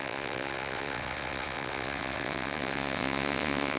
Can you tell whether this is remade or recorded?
remade